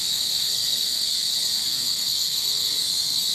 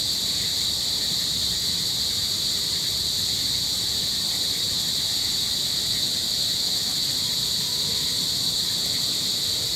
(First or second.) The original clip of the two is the second